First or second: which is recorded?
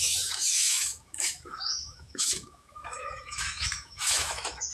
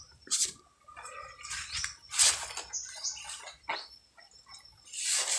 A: second